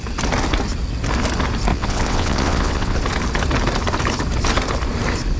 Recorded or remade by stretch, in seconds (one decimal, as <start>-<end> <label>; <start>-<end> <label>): 0.0-1.7 recorded; 1.7-3.0 remade; 3.0-5.4 recorded